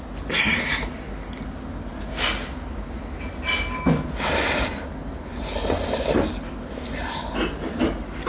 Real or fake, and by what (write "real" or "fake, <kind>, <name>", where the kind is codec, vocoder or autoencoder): real